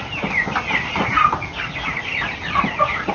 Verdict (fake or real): real